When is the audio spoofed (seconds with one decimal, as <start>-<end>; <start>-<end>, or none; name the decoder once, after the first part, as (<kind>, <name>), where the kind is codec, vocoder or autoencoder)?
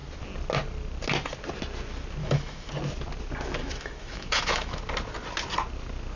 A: 2.2-2.7 (autoencoder, DAC-VAE); 3.6-4.8